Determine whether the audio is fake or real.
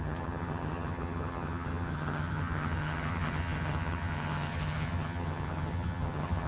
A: fake